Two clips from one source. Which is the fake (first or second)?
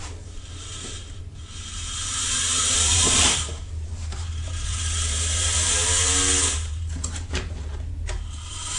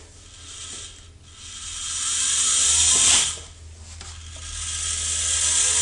first